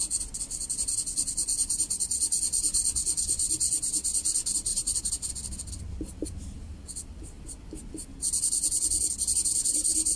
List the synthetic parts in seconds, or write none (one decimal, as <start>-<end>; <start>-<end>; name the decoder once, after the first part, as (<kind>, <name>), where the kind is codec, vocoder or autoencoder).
4.7-5.3 (vocoder, BigVGAN v2)